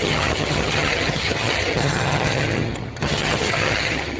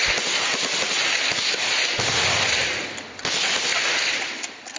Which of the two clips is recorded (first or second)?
second